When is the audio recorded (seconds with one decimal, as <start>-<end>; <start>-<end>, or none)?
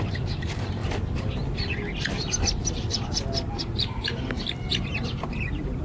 0.8-3.6